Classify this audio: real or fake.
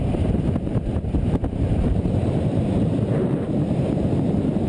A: fake